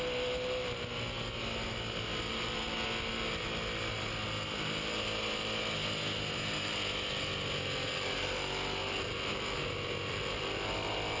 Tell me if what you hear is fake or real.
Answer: real